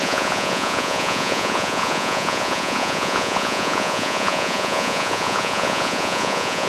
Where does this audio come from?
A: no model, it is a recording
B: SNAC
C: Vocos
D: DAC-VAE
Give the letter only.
C